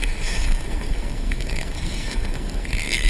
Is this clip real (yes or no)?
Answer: no